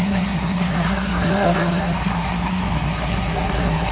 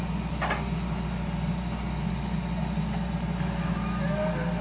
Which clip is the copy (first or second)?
first